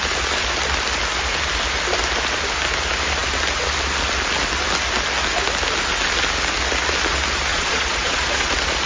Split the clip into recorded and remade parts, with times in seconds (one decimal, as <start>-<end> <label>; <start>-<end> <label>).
0.0-7.5 recorded; 7.5-8.5 remade; 8.5-8.9 recorded